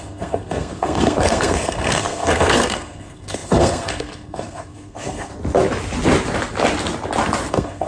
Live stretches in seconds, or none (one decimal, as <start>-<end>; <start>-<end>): 5.3-7.5